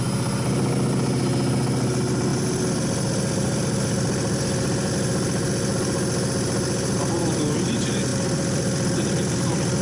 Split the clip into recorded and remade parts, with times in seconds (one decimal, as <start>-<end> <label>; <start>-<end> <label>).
0.0-2.3 recorded; 2.3-4.9 remade; 4.9-8.1 recorded; 8.1-9.8 remade